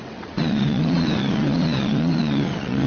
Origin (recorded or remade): remade